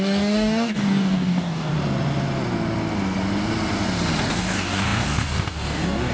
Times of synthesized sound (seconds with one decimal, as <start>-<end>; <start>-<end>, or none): 0.0-1.7; 4.3-6.1